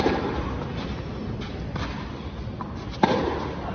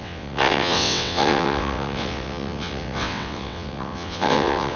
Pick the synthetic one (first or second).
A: second